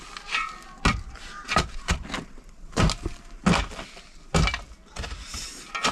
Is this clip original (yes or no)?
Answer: yes